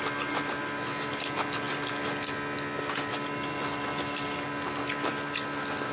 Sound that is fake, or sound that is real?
real